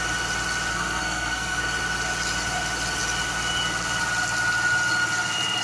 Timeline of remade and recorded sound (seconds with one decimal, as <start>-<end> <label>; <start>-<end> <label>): 0.0-0.7 recorded; 0.7-1.6 remade; 1.6-5.6 recorded